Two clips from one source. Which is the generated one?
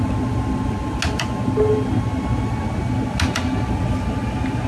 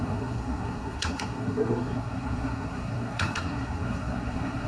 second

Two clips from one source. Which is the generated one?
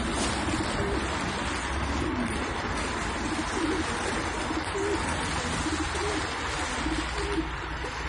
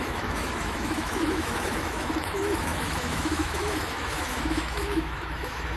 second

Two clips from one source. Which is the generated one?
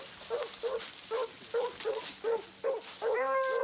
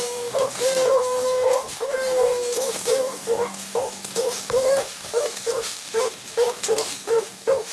second